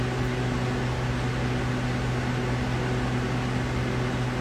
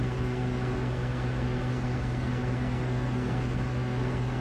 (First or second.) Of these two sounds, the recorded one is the first